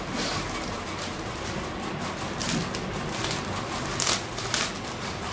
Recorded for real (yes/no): yes